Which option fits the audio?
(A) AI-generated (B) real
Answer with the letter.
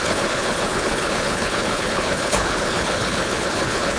A